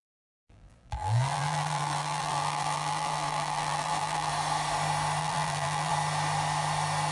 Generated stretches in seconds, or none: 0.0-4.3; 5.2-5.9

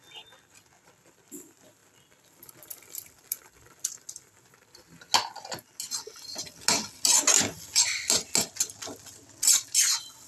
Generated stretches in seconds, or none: 1.8-4.1

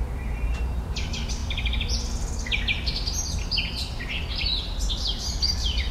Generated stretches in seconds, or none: none

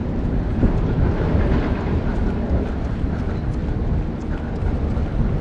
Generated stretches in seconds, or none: 0.0-2.1

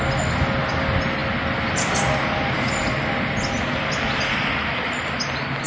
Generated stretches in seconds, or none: none

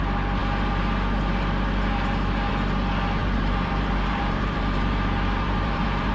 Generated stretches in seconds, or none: 3.2-6.1

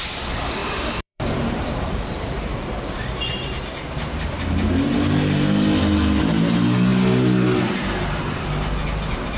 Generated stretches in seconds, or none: 0.6-3.6

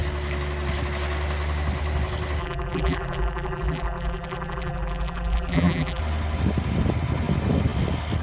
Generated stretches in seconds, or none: 2.4-6.0